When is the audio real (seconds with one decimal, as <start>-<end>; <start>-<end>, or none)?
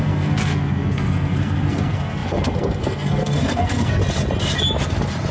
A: 4.0-5.3